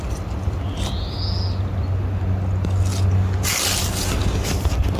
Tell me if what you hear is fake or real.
real